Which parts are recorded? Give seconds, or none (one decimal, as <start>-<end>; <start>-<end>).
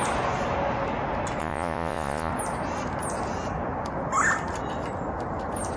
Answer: 0.0-1.4; 2.3-5.8